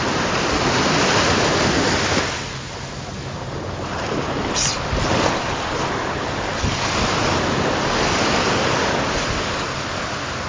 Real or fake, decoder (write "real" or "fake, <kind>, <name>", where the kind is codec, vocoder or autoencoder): real